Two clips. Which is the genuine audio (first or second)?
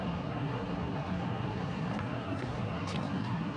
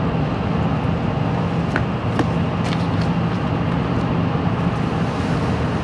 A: second